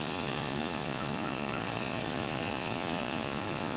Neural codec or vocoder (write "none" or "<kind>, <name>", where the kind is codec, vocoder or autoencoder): vocoder, Vocos